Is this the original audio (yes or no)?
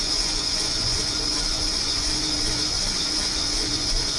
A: no